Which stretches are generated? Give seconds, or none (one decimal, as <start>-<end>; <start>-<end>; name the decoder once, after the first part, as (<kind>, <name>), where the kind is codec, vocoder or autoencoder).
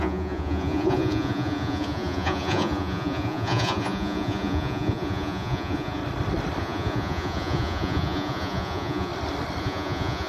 0.0-6.0 (vocoder, Vocos); 6.6-9.1; 9.6-10.3